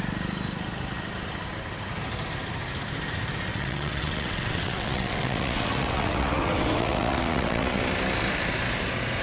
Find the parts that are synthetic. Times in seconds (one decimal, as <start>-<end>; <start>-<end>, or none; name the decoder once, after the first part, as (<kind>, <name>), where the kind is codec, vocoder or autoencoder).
3.5-7.8 (vocoder, WaveNeXt)